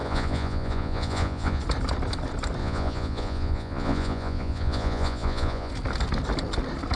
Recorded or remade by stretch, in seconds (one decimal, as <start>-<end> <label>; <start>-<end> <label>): 0.0-1.6 remade; 1.6-2.6 recorded; 2.6-5.7 remade; 5.7-7.0 recorded